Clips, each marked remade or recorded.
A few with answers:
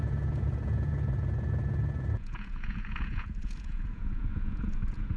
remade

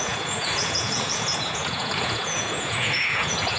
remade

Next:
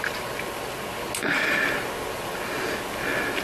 recorded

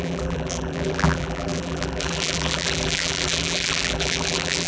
remade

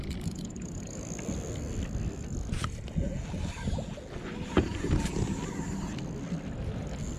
recorded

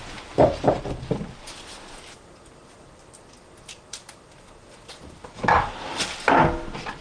recorded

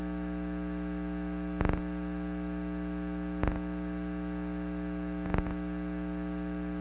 recorded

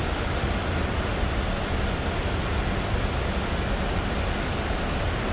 recorded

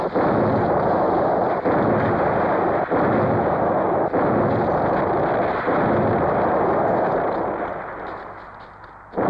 recorded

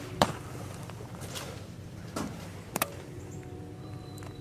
remade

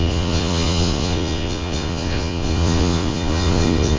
remade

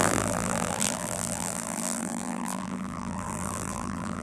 remade